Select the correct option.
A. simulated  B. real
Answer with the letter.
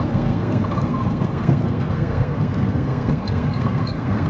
A